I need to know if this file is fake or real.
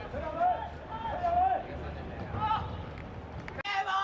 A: real